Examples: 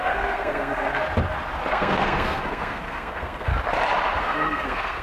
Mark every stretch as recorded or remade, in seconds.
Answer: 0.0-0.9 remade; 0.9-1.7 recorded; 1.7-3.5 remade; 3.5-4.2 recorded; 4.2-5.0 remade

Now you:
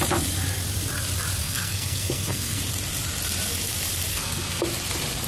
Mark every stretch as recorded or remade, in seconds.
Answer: 0.0-1.4 recorded; 1.4-2.6 remade; 2.6-4.1 recorded; 4.1-4.6 remade; 4.6-5.3 recorded

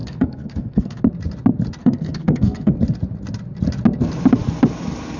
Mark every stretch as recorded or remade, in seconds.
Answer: 0.0-1.0 remade; 1.0-1.8 recorded; 1.8-2.8 remade; 2.8-5.2 recorded